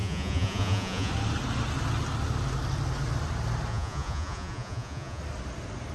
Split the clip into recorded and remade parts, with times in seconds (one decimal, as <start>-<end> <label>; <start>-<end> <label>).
0.0-1.1 remade; 1.1-3.7 recorded; 3.7-5.2 remade; 5.2-5.9 recorded